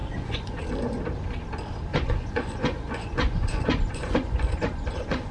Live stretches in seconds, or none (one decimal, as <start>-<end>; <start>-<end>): 0.6-1.9